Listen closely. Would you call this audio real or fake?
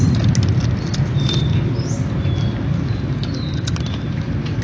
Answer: real